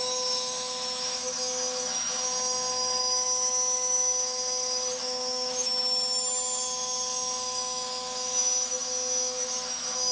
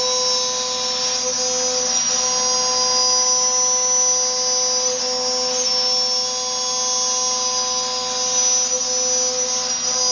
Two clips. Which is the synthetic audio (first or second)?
first